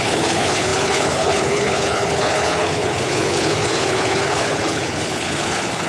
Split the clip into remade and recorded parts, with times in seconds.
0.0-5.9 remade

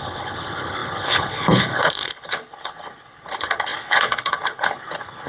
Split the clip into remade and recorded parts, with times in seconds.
0.0-5.3 remade